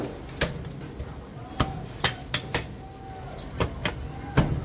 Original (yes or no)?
yes